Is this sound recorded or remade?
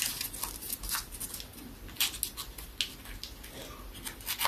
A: recorded